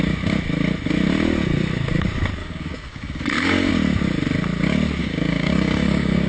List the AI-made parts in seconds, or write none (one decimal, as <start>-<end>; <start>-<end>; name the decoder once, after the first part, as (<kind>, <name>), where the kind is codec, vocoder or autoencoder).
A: 2.4-3.7 (codec, DAC); 5.0-6.3